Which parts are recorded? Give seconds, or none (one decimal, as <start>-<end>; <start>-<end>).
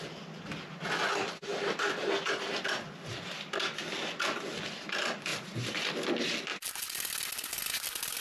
0.0-5.3; 5.9-8.2